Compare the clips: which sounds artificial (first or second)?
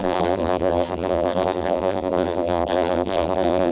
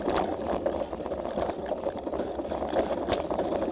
first